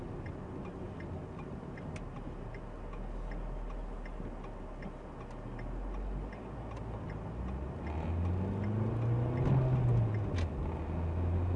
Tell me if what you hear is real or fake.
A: real